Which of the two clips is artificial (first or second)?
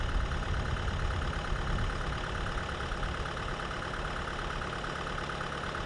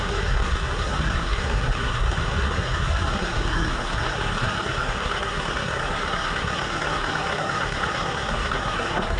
second